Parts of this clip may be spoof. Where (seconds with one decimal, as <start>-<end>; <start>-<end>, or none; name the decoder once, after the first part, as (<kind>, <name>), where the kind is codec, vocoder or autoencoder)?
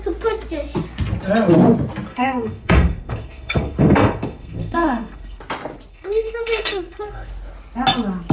2.1-5.4 (codec, SNAC); 5.9-7.3